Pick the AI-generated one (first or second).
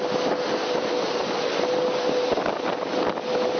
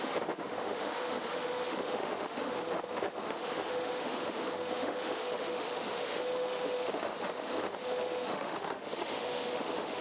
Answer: second